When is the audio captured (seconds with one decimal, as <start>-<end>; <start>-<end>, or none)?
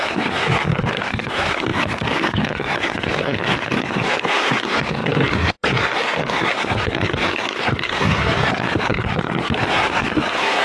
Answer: none